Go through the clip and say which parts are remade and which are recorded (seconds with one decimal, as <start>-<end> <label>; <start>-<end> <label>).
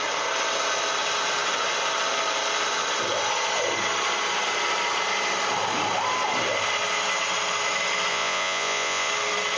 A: 0.0-8.1 recorded; 8.1-9.1 remade; 9.1-9.6 recorded